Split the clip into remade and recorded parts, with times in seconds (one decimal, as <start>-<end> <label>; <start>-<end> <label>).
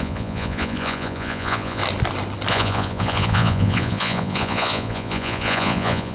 0.0-1.8 remade; 1.8-2.5 recorded; 2.5-6.1 remade